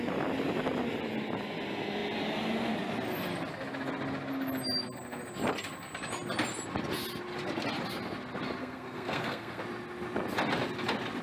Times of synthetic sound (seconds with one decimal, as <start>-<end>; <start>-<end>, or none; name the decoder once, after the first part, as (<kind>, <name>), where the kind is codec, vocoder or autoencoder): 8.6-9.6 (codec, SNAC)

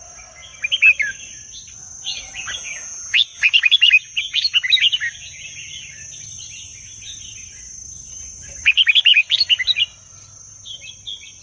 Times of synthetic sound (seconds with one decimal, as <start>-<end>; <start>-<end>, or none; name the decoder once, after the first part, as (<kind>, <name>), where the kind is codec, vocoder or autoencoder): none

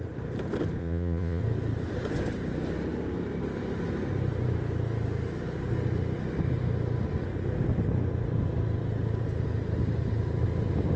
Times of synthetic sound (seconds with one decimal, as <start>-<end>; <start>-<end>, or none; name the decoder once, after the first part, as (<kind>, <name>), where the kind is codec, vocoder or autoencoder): 0.8-1.4 (vocoder, Vocos)

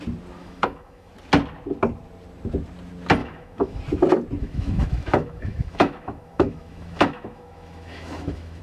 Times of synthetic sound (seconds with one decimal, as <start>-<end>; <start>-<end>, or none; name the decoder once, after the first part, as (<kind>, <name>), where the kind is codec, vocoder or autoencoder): 0.4-1.1 (autoencoder, DAC-VAE); 3.2-3.8; 4.4-8.6

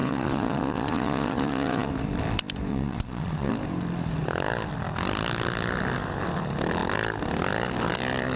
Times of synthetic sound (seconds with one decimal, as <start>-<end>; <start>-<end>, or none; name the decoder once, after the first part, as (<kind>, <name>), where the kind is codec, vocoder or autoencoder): 0.0-1.9 (vocoder, Vocos); 2.7-3.5

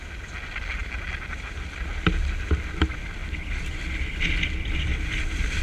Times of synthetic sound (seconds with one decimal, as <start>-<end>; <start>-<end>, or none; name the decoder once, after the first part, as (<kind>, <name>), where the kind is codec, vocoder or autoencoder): 3.2-3.8 (vocoder, BigVGAN v2)

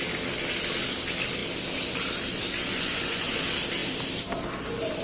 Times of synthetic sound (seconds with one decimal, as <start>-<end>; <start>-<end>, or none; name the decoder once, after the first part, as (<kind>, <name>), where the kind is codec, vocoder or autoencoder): 2.7-3.3 (vocoder, Vocos)

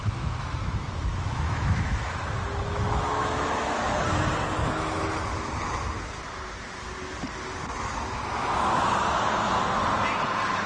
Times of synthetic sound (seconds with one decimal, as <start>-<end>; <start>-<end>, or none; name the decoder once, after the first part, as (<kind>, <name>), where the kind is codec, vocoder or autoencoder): 0.0-4.0 (autoencoder, DAC-VAE)